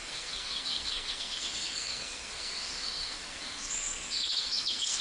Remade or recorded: remade